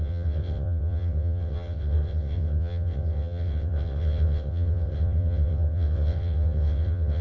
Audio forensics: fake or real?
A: fake